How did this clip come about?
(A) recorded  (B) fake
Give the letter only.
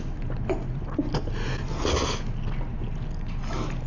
A